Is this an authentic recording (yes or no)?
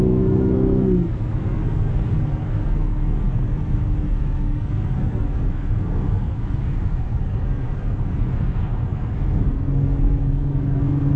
no